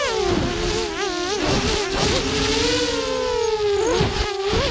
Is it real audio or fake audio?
real